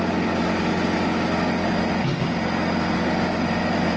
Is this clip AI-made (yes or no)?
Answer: no